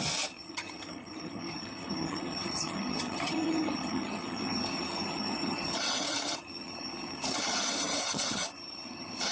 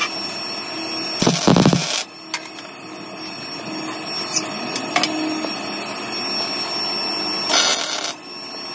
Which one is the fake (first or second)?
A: first